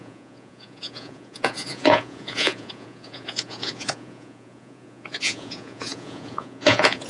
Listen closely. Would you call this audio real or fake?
fake